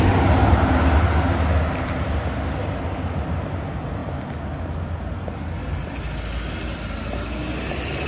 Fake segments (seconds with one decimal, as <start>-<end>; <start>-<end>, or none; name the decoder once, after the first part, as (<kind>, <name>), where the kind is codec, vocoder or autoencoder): none